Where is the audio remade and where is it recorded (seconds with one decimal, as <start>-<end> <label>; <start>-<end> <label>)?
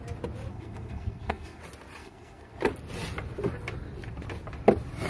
0.0-0.5 recorded; 0.5-1.6 remade; 1.6-2.0 recorded; 2.0-2.6 remade; 2.6-5.1 recorded